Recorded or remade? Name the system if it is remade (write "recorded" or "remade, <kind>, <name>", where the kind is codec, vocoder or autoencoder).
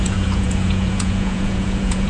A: remade, vocoder, Vocos